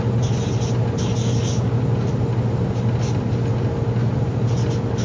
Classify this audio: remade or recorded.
recorded